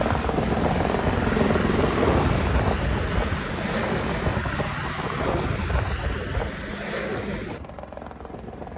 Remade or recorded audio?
recorded